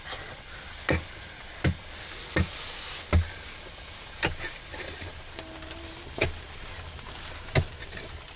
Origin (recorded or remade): recorded